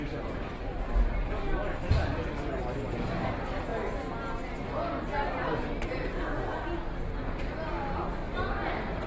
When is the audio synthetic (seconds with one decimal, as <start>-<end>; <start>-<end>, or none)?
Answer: none